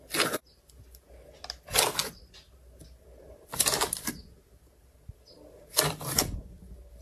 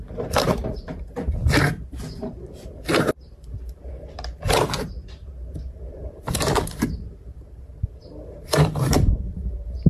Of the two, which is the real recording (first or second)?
first